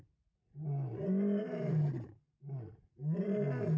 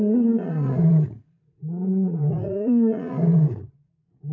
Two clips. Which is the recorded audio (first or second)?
first